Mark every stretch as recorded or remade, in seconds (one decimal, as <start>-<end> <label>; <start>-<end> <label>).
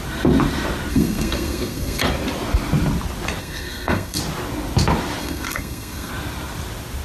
0.0-0.9 recorded; 0.9-2.0 remade; 2.0-3.4 recorded; 3.4-4.2 remade; 4.2-5.2 recorded; 5.2-6.1 remade; 6.1-7.0 recorded